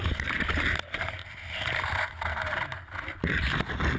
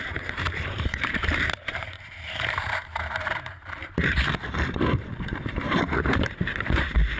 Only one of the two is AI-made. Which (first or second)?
second